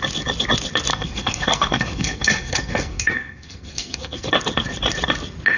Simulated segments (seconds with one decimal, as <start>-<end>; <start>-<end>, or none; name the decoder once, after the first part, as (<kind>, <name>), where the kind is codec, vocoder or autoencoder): 0.9-4.3 (codec, SNAC)